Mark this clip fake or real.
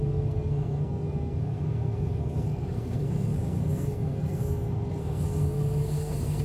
fake